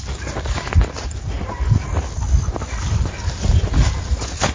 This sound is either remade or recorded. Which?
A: recorded